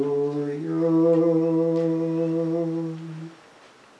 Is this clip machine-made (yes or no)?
no